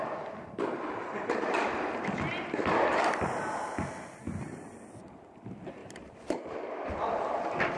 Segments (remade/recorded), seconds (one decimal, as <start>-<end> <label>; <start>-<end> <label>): 0.0-2.9 recorded; 2.9-3.4 remade; 3.4-5.8 recorded; 5.8-6.6 remade; 6.6-7.8 recorded